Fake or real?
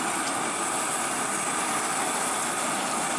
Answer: real